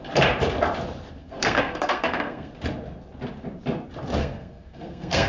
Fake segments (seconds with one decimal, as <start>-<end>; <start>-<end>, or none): 1.2-2.5; 4.2-5.3